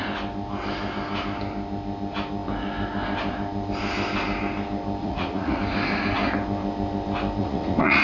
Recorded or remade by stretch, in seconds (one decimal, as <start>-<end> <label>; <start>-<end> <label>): 0.0-5.0 recorded; 5.0-5.6 remade; 5.6-7.4 recorded; 7.4-8.0 remade